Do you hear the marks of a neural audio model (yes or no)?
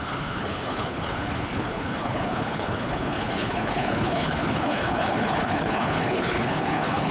yes